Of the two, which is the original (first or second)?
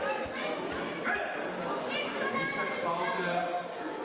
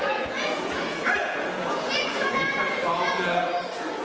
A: first